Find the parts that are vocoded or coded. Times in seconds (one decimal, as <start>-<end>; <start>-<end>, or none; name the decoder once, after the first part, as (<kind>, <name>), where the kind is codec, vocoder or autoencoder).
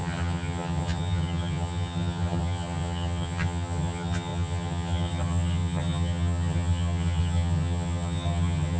0.0-8.8 (vocoder, HiFi-GAN)